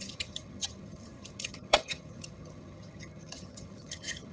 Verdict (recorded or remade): remade